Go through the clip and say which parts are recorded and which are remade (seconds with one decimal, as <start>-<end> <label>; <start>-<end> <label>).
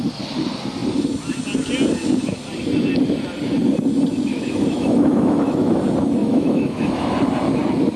0.0-4.3 recorded; 4.3-5.8 remade; 5.8-6.2 recorded; 6.2-7.1 remade; 7.1-8.0 recorded